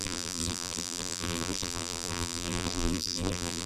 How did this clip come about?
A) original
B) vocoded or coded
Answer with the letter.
B